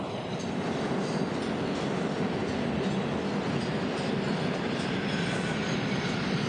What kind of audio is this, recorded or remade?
recorded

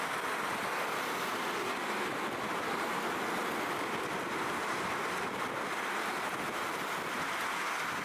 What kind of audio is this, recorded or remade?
recorded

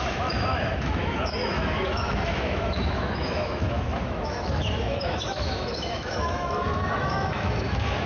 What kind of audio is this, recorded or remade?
remade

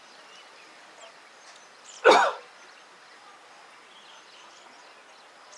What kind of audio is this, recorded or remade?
recorded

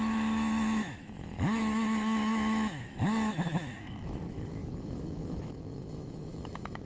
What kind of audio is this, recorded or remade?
remade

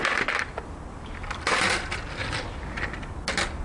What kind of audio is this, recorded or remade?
recorded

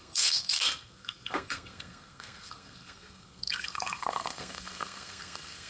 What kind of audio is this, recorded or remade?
remade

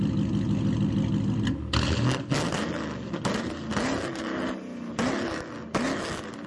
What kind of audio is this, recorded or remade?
recorded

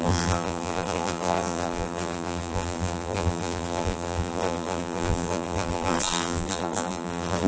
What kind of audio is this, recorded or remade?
remade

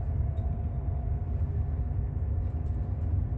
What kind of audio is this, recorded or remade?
recorded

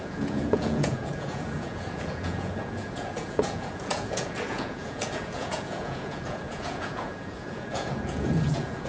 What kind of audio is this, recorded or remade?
remade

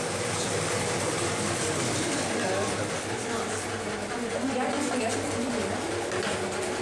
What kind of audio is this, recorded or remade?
recorded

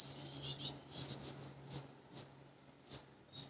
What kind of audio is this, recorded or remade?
recorded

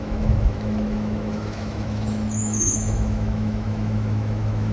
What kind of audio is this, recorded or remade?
remade